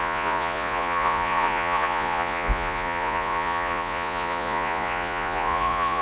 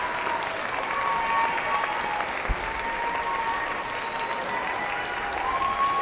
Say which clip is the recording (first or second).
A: second